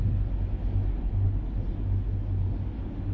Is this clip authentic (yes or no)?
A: yes